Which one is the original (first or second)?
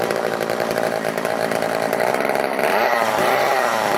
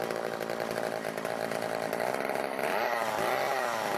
second